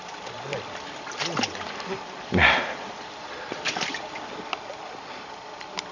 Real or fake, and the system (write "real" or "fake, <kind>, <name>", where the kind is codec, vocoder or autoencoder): real